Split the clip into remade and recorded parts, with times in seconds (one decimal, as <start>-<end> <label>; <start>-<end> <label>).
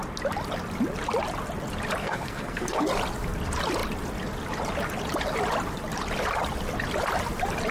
0.0-2.0 recorded; 2.0-2.8 remade; 2.8-7.7 recorded